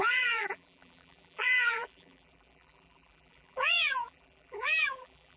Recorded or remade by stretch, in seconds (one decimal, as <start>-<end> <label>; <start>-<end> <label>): 0.0-5.4 remade